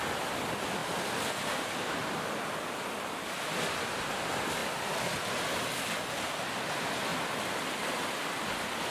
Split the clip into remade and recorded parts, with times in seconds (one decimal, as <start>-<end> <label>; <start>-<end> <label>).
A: 0.0-8.9 recorded